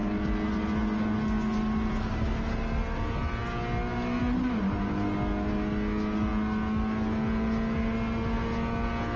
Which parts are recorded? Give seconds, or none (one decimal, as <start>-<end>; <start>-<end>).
0.0-9.2